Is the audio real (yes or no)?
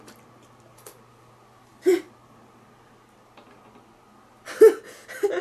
yes